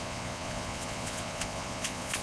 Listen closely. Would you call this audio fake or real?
fake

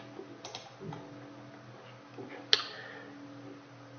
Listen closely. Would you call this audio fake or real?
real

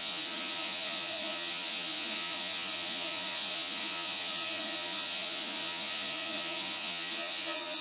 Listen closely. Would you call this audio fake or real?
fake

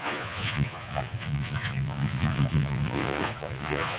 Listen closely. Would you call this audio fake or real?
fake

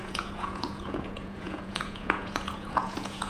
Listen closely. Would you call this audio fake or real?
fake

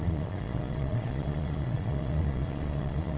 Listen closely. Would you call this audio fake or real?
fake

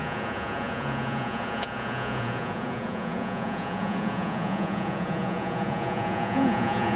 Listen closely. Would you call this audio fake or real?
fake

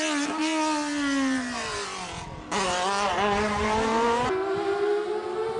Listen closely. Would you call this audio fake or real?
real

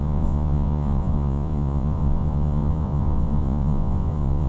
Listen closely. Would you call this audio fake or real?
fake